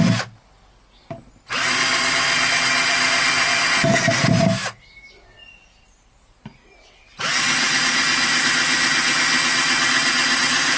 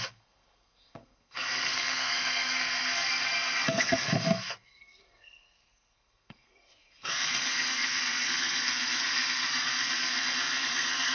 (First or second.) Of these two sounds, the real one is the first